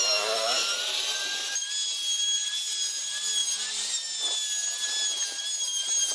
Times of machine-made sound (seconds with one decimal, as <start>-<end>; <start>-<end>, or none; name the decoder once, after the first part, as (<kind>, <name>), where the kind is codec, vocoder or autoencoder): none